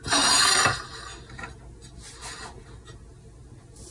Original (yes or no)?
yes